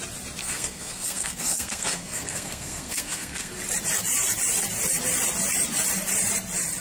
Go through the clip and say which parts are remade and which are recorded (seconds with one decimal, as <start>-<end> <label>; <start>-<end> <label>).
0.0-0.4 recorded; 0.4-3.5 remade; 3.5-6.8 recorded